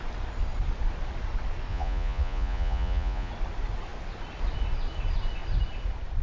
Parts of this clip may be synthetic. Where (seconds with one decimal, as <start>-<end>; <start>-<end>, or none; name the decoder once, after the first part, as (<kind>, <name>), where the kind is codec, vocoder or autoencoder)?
1.7-3.3 (vocoder, Vocos)